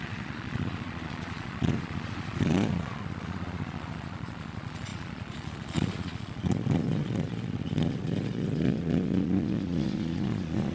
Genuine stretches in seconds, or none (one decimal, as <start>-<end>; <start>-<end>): none